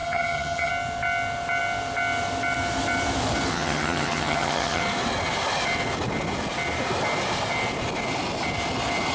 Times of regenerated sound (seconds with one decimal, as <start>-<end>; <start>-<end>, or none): 0.0-0.7; 3.5-4.8